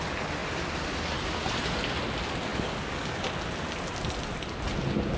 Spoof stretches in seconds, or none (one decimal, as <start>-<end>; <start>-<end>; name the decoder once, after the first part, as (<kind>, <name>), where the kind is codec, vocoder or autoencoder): 2.5-3.2 (codec, DAC)